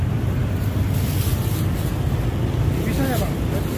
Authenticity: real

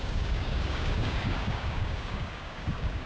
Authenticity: fake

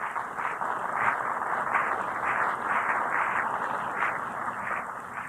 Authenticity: real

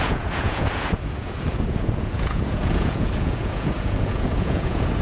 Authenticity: fake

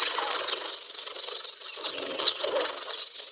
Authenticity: real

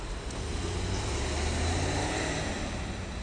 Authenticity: real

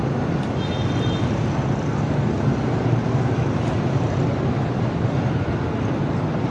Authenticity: real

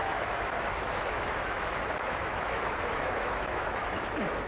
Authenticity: fake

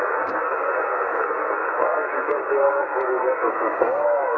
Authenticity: fake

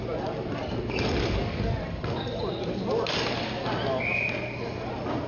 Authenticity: real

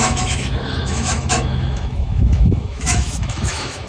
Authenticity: fake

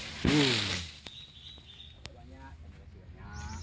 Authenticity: real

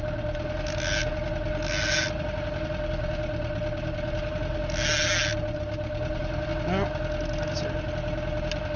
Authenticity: real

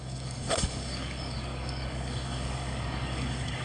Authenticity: fake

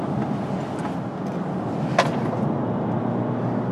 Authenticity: real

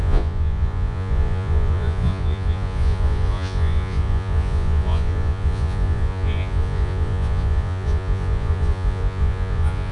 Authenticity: fake